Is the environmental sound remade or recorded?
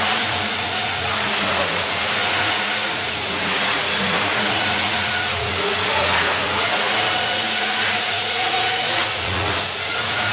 remade